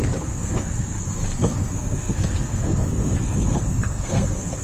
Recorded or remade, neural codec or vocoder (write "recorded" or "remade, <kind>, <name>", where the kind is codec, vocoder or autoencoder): remade, codec, SNAC